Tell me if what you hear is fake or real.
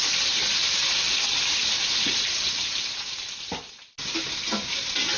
real